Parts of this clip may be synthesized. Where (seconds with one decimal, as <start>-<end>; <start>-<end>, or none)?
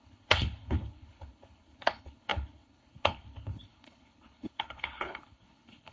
0.0-5.9